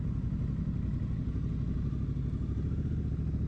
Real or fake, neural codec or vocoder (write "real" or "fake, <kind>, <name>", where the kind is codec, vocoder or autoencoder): real